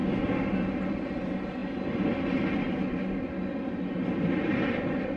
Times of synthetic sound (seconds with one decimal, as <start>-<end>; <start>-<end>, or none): 0.9-1.6; 4.5-5.2